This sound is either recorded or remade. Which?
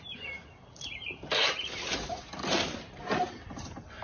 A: remade